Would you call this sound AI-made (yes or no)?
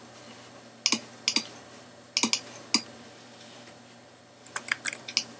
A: no